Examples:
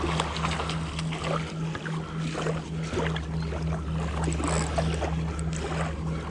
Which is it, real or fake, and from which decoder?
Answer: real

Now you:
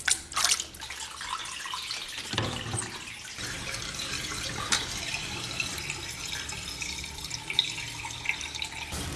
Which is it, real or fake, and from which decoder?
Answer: real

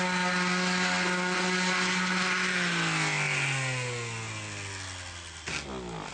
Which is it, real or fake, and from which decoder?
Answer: real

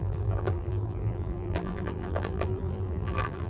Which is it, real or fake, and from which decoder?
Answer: fake, vocoder, BigVGAN v2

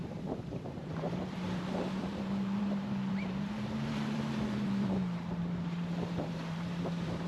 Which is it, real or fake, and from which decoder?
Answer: fake, vocoder, BigVGAN v2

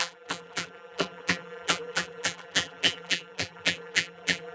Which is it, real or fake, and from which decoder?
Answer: fake, vocoder, BigVGAN v2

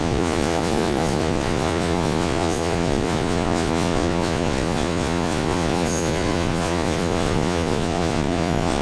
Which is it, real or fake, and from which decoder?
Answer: fake, vocoder, Vocos